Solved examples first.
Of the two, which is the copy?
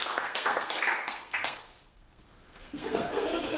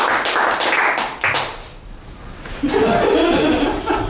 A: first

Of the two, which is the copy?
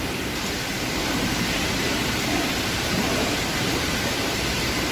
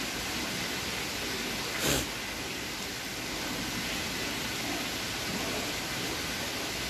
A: first